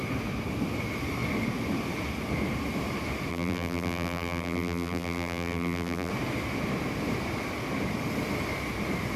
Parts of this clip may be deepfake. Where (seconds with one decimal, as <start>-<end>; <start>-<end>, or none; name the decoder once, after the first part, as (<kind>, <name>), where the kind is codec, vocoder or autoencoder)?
3.3-6.1 (vocoder, BigVGAN v2)